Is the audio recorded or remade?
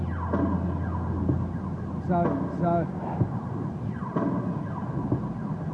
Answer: recorded